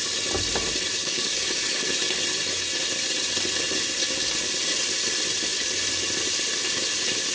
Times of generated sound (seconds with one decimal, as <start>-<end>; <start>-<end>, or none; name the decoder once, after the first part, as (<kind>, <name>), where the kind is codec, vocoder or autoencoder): 1.0-1.9 (codec, DAC)